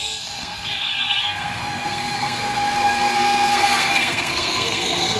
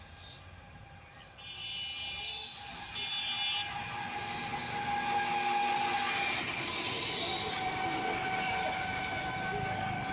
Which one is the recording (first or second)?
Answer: second